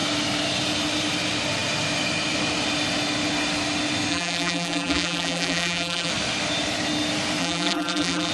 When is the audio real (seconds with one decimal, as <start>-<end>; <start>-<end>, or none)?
0.0-4.1; 6.1-7.4